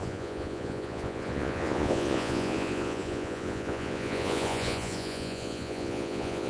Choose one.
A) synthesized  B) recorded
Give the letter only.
A